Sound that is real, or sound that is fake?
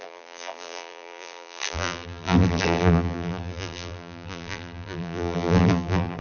fake